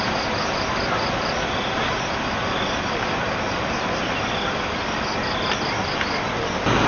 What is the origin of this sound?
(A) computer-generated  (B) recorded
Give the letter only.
B